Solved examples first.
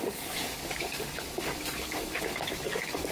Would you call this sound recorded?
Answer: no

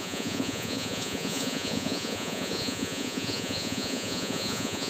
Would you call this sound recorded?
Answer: no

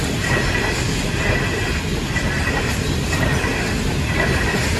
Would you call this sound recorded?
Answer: yes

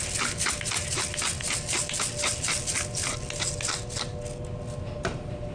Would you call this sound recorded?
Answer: yes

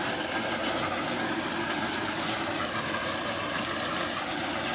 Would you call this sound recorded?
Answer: yes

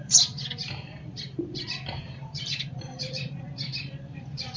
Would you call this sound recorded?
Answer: no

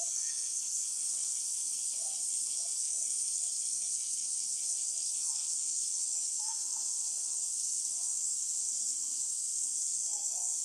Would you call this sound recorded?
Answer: no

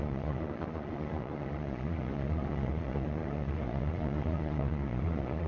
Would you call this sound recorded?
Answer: no